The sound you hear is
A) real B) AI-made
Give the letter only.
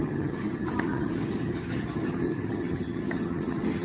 B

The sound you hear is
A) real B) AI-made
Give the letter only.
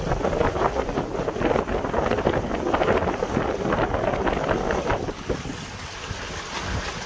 A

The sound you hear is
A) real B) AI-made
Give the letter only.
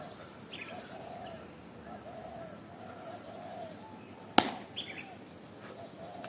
A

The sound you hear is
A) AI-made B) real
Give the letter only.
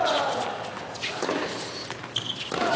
B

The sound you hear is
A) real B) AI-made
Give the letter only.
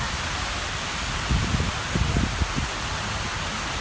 A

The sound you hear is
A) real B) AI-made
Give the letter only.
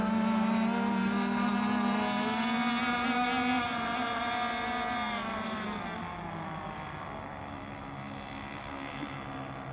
A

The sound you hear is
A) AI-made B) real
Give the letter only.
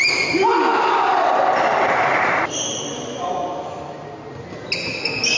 B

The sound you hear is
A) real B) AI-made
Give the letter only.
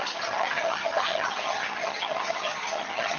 B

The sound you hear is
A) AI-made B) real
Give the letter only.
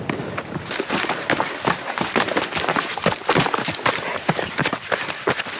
B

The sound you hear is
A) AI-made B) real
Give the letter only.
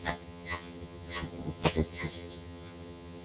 A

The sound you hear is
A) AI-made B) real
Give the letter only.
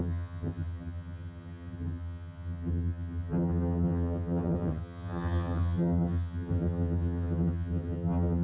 A